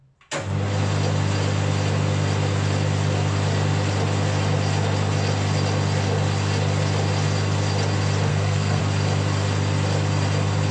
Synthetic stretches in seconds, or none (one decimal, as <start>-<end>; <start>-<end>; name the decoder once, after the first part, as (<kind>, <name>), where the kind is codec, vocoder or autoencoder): 8.3-8.8 (codec, SNAC)